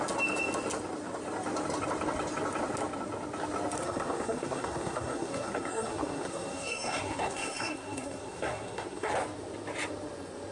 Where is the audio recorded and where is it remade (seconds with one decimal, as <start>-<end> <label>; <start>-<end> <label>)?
0.0-3.8 recorded; 3.8-9.1 remade; 9.1-10.5 recorded